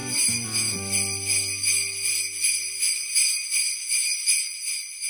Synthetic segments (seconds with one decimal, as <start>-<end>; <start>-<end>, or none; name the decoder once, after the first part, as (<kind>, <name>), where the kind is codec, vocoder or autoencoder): none